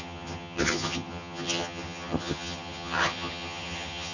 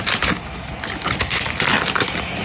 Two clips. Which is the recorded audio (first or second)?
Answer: second